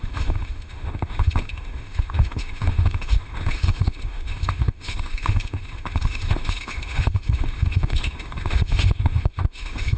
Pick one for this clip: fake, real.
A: fake